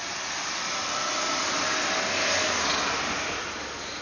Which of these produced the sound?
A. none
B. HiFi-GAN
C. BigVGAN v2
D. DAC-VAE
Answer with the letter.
A